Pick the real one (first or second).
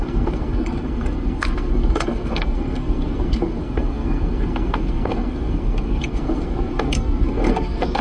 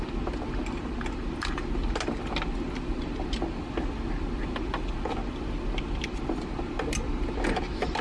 second